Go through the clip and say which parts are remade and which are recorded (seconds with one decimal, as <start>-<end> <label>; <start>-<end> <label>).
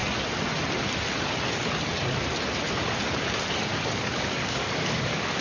0.0-3.7 recorded; 3.7-5.4 remade